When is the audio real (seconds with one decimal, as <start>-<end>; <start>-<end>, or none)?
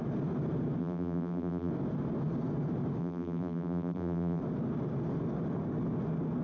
0.0-0.8; 1.7-3.0; 4.4-6.4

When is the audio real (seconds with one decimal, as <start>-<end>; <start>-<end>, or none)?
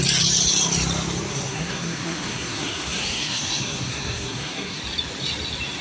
0.0-1.3; 4.8-5.8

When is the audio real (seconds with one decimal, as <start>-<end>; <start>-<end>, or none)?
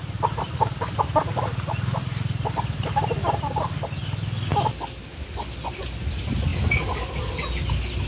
0.0-8.1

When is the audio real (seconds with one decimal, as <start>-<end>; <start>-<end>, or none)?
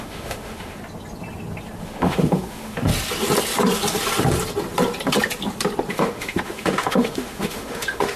0.8-1.8; 2.9-5.9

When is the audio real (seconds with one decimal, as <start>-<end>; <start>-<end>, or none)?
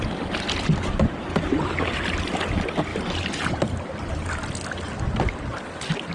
0.0-6.1